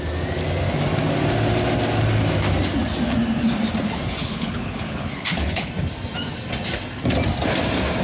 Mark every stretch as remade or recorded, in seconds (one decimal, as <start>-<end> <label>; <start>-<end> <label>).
0.0-4.2 recorded; 4.2-5.7 remade; 5.7-8.0 recorded

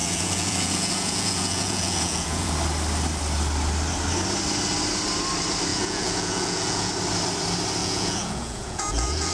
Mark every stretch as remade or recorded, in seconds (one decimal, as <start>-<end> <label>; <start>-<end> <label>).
0.0-2.5 remade; 2.5-5.7 recorded; 5.7-6.9 remade; 6.9-7.8 recorded; 7.8-9.3 remade

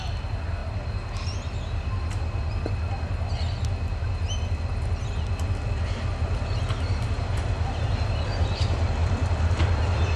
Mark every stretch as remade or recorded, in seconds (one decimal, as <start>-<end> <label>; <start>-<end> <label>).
0.0-10.2 recorded

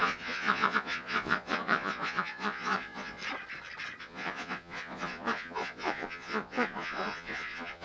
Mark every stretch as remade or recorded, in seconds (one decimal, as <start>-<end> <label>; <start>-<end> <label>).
0.0-3.2 remade; 3.2-4.0 recorded; 4.0-7.8 remade

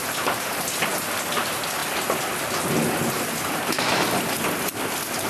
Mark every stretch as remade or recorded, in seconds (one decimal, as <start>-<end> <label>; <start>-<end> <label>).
0.0-5.3 recorded